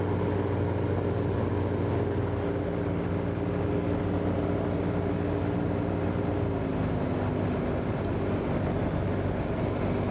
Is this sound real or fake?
real